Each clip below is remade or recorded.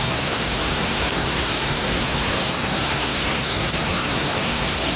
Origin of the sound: remade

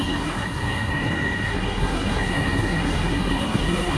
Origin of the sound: remade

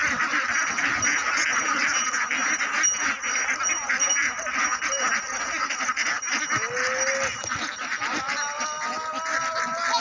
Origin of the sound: recorded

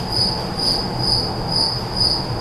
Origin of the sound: recorded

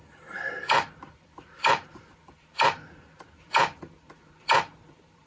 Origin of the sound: remade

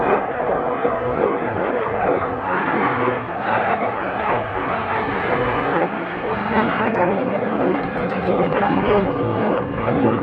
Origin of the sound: remade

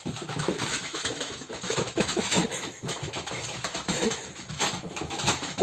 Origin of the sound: remade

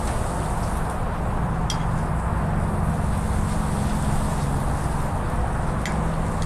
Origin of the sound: recorded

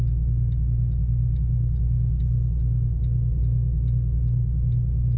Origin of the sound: recorded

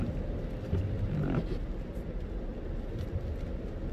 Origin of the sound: recorded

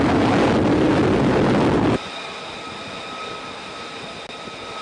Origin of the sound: recorded